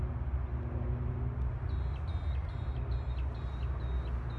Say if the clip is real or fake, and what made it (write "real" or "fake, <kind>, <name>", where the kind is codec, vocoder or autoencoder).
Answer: real